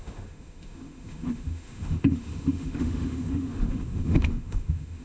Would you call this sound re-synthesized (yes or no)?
yes